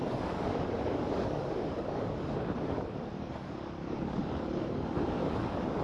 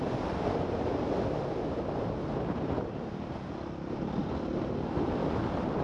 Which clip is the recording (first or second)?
second